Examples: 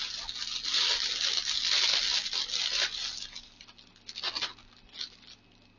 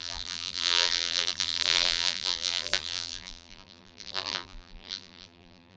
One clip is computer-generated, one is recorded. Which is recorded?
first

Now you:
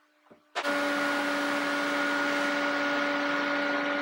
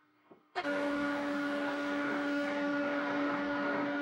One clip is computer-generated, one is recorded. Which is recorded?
first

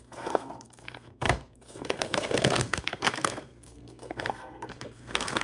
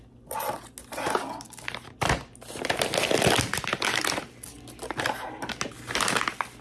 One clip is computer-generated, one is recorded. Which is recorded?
second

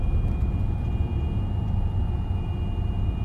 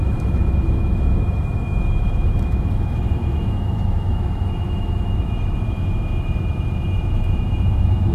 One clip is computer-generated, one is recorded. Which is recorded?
first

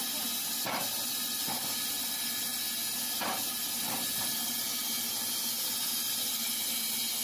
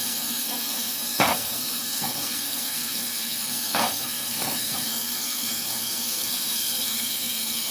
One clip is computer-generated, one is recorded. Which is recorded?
first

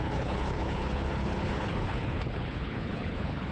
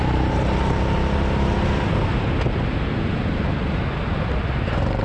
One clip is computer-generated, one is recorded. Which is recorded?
second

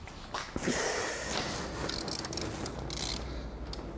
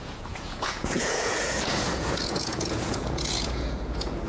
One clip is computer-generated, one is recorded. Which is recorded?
first